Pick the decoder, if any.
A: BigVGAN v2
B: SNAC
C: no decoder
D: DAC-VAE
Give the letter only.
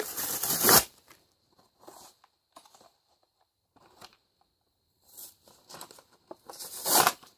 A